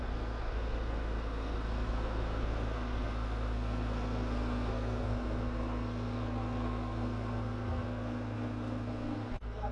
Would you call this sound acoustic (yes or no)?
no